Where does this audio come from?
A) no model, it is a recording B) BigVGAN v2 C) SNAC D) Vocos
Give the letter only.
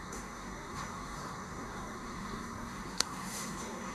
C